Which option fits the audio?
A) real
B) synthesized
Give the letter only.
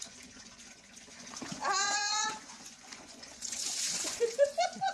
B